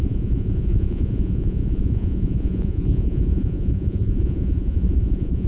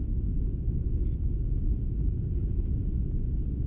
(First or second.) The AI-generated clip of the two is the first